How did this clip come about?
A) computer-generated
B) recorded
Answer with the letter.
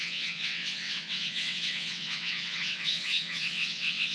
A